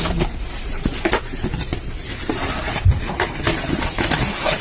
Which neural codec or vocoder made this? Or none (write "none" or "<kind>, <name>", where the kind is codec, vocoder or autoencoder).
none